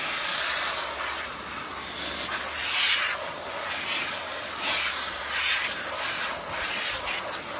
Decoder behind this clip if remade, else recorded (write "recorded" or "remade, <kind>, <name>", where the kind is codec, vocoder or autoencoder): recorded